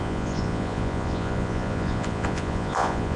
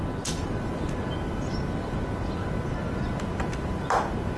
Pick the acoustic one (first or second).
second